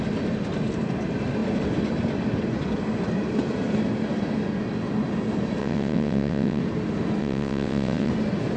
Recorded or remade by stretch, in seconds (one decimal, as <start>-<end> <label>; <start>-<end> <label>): 0.0-5.6 recorded; 5.6-6.6 remade; 6.6-7.2 recorded; 7.2-8.1 remade; 8.1-8.6 recorded